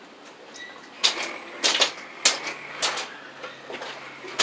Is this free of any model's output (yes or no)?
yes